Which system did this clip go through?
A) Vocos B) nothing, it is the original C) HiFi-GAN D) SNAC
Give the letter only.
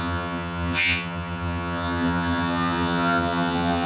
C